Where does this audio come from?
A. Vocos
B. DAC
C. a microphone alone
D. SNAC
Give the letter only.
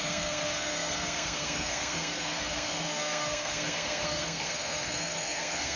D